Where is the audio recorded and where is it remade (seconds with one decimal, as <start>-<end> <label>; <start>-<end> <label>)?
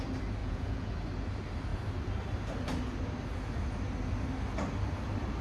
0.0-0.4 recorded; 0.4-0.9 remade; 0.9-5.4 recorded